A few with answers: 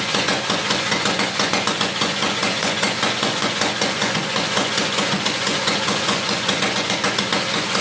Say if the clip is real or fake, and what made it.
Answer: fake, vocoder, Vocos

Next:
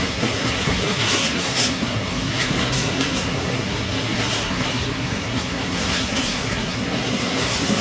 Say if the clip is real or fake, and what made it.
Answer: fake, codec, SNAC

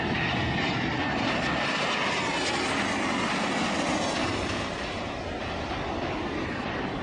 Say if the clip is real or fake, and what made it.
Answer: real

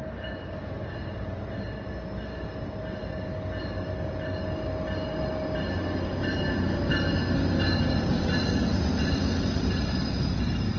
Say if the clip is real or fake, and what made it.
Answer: real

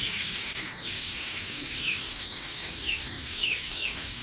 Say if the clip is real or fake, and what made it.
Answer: fake, codec, DAC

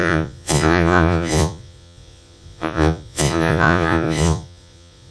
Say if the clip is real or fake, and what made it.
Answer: fake, vocoder, Vocos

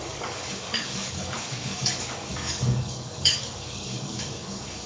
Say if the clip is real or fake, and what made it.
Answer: fake, codec, DAC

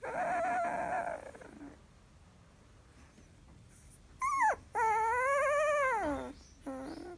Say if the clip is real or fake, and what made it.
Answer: real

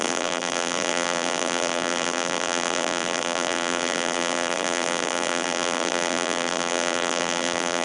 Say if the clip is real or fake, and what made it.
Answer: fake, vocoder, BigVGAN v2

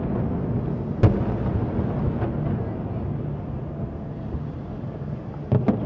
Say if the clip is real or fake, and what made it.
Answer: real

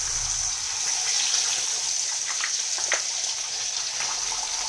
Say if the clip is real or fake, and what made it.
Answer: fake, vocoder, BigVGAN v2